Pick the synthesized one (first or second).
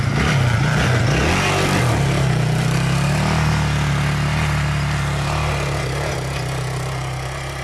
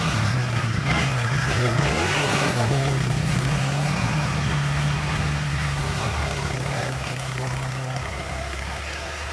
second